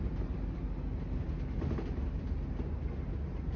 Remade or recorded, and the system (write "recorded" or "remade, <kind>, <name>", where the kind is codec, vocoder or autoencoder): recorded